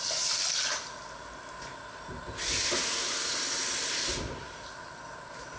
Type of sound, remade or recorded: recorded